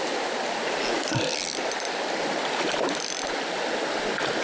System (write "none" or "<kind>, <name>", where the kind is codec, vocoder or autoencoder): none